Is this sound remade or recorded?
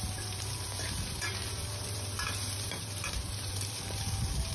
remade